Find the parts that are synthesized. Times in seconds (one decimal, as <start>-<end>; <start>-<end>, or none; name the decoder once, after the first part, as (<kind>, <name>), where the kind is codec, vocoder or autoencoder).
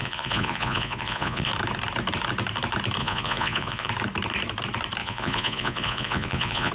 0.0-1.5 (vocoder, Vocos); 3.0-3.9; 5.0-6.7